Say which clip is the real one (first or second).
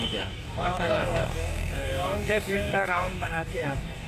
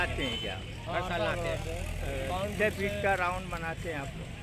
second